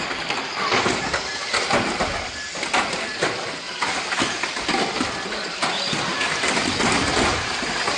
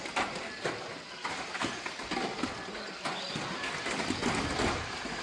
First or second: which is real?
second